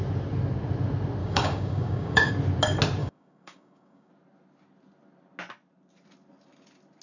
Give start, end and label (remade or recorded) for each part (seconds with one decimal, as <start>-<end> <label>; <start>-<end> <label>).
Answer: 0.0-1.2 recorded; 1.2-2.3 remade; 2.3-3.0 recorded; 3.0-4.1 remade; 4.1-7.0 recorded